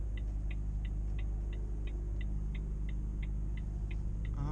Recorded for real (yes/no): yes